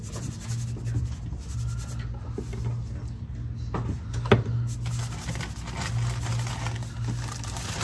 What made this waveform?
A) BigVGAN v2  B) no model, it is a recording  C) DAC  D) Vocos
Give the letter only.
B